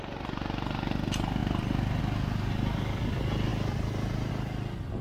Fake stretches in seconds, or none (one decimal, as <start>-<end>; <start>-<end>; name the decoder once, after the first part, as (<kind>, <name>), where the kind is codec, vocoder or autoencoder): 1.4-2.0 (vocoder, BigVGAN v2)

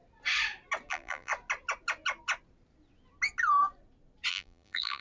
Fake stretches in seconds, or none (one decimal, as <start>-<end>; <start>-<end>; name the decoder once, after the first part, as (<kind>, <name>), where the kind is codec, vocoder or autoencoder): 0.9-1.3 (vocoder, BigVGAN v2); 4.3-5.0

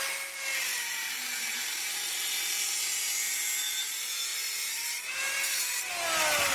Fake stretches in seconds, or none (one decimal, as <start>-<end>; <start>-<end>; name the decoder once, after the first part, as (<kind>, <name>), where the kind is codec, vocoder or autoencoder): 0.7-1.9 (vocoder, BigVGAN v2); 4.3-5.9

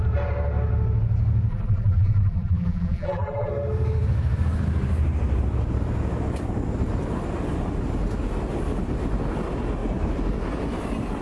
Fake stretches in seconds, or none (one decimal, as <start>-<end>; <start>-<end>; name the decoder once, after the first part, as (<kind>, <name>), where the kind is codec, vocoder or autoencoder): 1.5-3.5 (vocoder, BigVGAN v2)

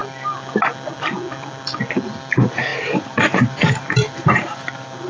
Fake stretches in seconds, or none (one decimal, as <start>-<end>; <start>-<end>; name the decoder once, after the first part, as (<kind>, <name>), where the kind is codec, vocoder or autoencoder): 2.3-5.1 (vocoder, BigVGAN v2)

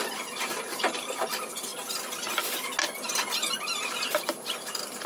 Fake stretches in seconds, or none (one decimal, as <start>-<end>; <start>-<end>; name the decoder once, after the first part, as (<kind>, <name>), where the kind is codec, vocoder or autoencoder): 0.0-1.7 (vocoder, BigVGAN v2); 3.9-5.1